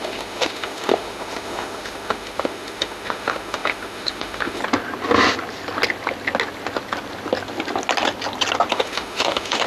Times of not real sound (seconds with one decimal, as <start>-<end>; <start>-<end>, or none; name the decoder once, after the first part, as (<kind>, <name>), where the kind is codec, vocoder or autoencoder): 0.0-4.6 (autoencoder, DAC-VAE); 8.7-9.7